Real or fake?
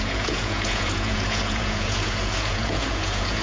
fake